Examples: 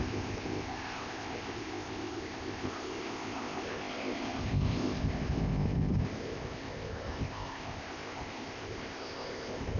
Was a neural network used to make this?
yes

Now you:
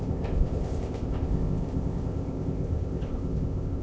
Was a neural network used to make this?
yes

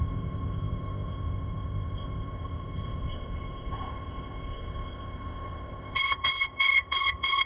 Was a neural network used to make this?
yes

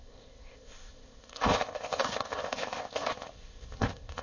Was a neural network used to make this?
yes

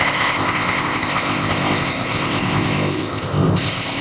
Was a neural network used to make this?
yes